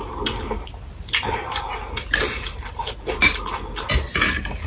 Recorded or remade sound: recorded